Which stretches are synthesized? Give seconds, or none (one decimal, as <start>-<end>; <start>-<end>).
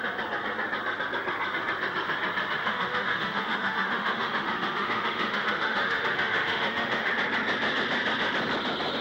2.6-7.1